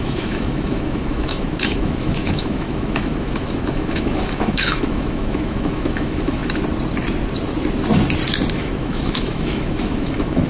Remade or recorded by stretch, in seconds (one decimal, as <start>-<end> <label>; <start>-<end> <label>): 0.0-6.4 remade; 6.4-8.5 recorded; 8.5-10.5 remade

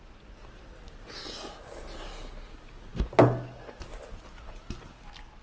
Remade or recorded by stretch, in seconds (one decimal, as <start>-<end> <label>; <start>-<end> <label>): 0.0-5.4 recorded

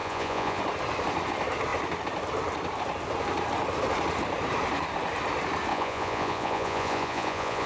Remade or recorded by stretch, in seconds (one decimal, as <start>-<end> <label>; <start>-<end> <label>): 0.0-0.6 remade; 0.6-5.7 recorded; 5.7-7.7 remade

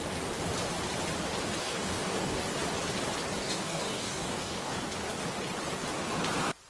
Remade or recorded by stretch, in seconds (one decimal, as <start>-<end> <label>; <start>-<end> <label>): 0.0-1.6 recorded; 1.6-2.4 remade; 2.4-3.4 recorded; 3.4-4.9 remade; 4.9-6.7 recorded